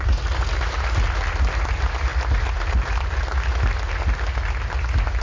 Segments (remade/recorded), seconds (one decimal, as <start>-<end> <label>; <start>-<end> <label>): 0.0-5.2 recorded